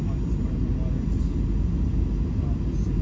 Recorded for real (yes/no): yes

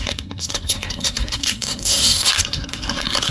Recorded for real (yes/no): no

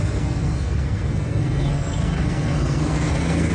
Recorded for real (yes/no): no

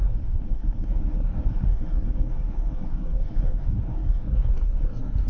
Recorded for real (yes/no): no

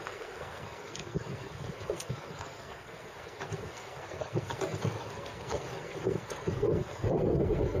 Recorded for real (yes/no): no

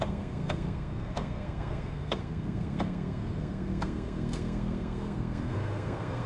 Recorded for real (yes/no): no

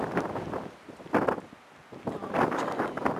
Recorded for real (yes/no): yes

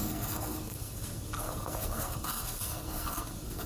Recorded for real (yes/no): no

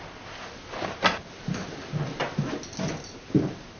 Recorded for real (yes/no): yes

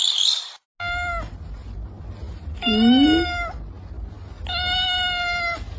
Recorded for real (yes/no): yes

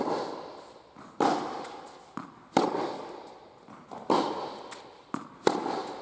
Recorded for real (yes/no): yes